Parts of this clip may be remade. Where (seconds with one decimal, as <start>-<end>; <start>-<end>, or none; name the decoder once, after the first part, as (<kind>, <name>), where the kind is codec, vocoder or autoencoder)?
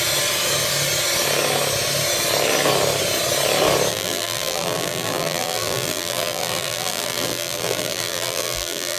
3.9-9.0 (vocoder, BigVGAN v2)